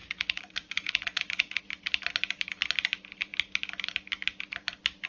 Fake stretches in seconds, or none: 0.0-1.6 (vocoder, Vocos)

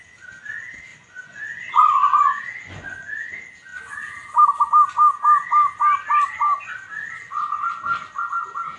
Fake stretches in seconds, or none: 0.9-3.3 (vocoder, Vocos)

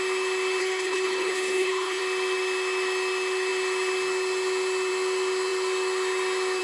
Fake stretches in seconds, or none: 0.6-2.0 (codec, HILCodec)

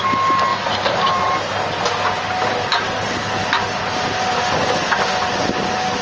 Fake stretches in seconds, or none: 0.5-1.3 (vocoder, BigVGAN v2)

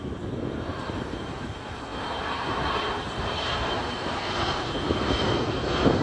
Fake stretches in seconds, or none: 0.0-6.0 (vocoder, BigVGAN v2)

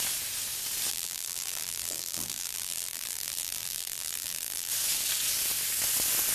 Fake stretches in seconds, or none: 0.9-4.7 (vocoder, BigVGAN v2)

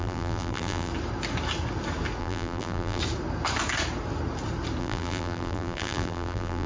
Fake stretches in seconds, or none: 0.0-0.9 (vocoder, BigVGAN v2); 2.2-3.0; 4.8-6.7

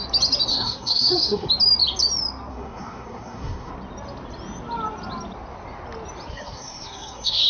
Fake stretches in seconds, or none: 0.5-1.5 (codec, SNAC); 2.5-3.7; 6.3-7.5